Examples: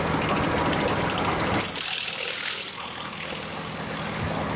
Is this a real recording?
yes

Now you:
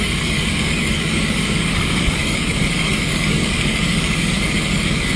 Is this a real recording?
no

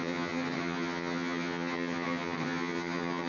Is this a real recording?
no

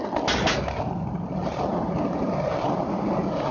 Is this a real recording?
yes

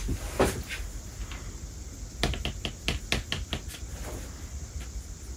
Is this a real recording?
yes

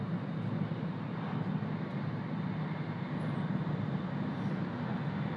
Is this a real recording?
yes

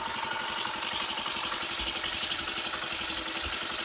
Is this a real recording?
yes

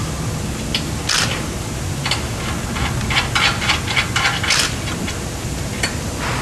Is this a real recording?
yes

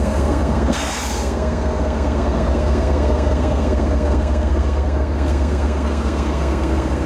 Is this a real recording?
no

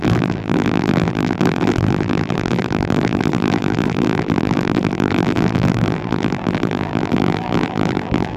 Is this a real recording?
no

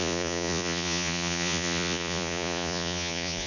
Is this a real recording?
no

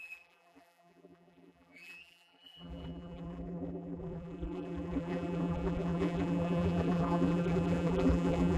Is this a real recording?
no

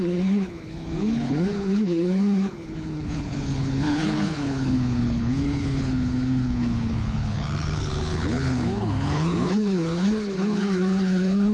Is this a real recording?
no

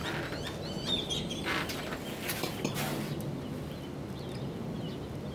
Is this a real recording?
yes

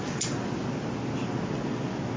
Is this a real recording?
yes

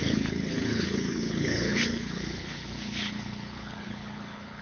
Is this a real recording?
no